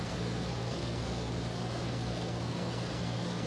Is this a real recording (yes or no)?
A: no